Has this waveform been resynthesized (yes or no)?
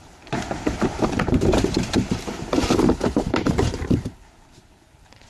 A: yes